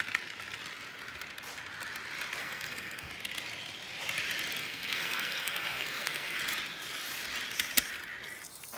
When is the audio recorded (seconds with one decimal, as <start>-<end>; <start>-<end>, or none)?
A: 0.0-2.4; 3.1-4.6; 6.4-8.8

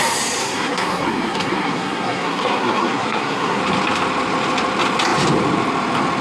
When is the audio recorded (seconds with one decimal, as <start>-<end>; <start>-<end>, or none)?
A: 0.0-0.4; 3.6-6.2

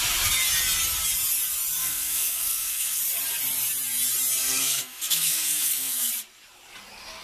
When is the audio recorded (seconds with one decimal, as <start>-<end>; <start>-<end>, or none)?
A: 0.0-1.8; 3.0-4.4; 6.1-7.2

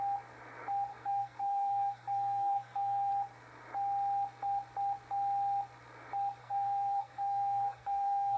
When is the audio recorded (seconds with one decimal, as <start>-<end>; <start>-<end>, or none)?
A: 0.0-0.9; 3.1-6.4

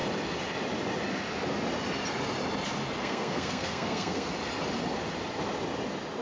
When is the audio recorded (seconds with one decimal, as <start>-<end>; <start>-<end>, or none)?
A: 0.0-3.0; 4.3-6.2

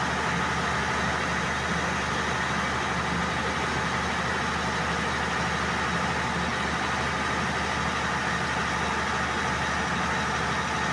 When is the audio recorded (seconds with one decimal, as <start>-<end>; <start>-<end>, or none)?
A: 0.0-10.9